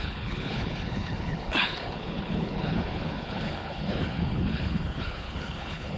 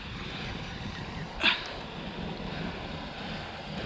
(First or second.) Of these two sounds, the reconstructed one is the first